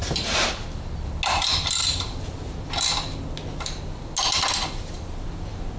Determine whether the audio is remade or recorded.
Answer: recorded